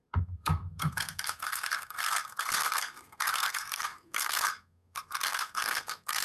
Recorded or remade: remade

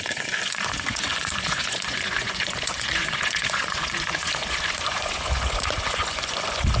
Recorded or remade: remade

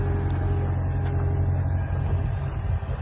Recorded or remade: recorded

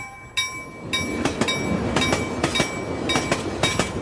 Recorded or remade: recorded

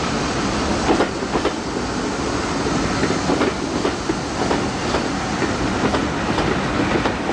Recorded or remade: recorded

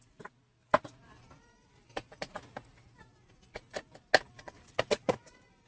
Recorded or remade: recorded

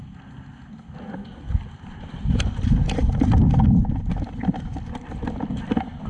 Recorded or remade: recorded